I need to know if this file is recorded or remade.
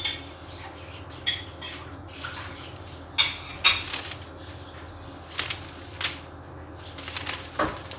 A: recorded